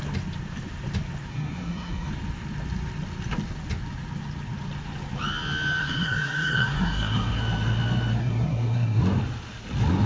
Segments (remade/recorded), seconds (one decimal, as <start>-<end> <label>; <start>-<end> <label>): 0.0-1.3 recorded; 1.3-2.1 remade; 2.1-5.8 recorded; 5.8-7.4 remade; 7.4-8.2 recorded; 8.2-9.0 remade; 9.0-10.1 recorded